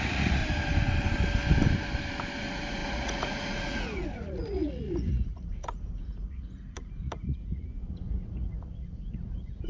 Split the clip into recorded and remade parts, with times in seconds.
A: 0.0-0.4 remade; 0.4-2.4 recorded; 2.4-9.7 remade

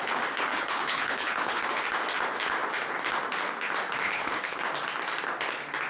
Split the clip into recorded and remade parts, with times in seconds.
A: 0.0-0.5 recorded; 0.5-1.6 remade; 1.6-4.0 recorded; 4.0-4.6 remade; 4.6-5.9 recorded

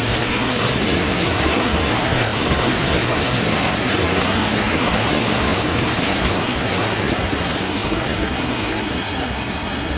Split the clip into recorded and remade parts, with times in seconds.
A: 0.0-10.0 remade

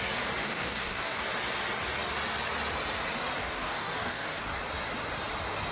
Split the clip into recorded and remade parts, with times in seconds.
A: 0.0-0.4 recorded; 0.4-1.2 remade; 1.2-3.4 recorded; 3.4-4.4 remade; 4.4-5.7 recorded

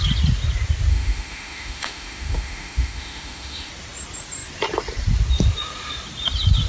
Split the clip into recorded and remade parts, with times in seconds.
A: 0.0-0.9 recorded; 0.9-3.7 remade; 3.7-6.7 recorded

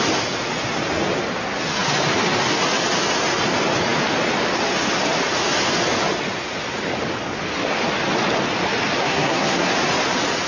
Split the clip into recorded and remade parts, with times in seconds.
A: 0.0-9.0 recorded; 9.0-9.7 remade; 9.7-10.5 recorded

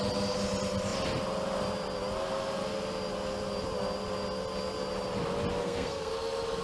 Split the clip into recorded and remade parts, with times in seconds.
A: 0.0-5.6 recorded; 5.6-6.1 remade; 6.1-6.6 recorded

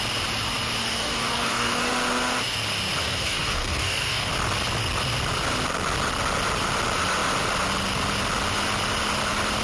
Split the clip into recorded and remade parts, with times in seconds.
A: 0.0-0.8 recorded; 0.8-1.9 remade; 1.9-3.0 recorded; 3.0-4.3 remade; 4.3-9.6 recorded